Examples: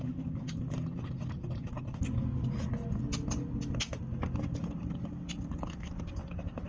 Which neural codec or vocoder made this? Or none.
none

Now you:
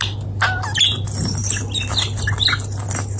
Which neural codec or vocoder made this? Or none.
none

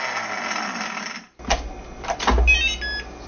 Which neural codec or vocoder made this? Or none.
none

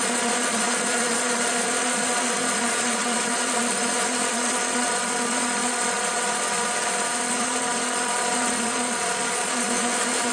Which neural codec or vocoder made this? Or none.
vocoder, Vocos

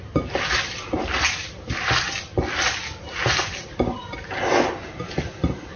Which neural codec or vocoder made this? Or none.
none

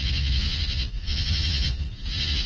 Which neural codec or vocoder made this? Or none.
vocoder, Vocos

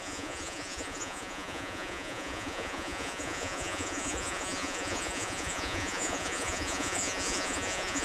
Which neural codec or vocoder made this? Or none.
vocoder, Vocos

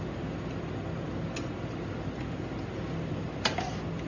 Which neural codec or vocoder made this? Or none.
none